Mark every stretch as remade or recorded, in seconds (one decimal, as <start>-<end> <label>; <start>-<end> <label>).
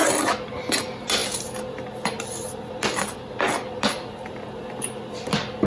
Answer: 0.0-5.7 recorded